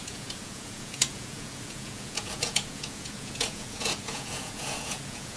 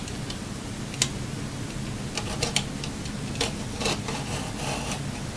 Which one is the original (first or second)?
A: second